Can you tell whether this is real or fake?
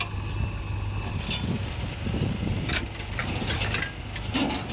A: real